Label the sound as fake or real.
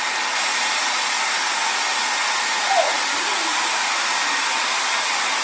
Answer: real